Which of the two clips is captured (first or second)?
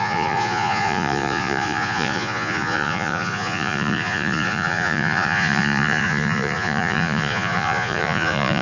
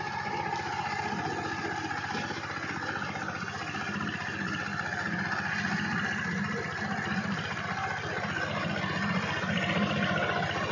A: second